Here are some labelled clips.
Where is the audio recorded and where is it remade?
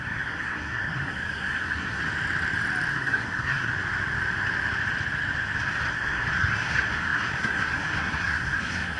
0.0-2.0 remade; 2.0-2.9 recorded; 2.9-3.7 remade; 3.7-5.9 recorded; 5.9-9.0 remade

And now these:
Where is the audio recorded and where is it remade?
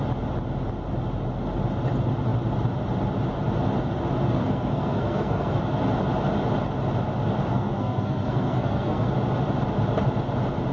0.0-4.4 recorded; 4.4-5.6 remade; 5.6-7.4 recorded; 7.4-9.1 remade; 9.1-10.7 recorded